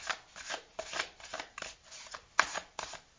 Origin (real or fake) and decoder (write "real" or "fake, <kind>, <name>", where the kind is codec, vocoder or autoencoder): real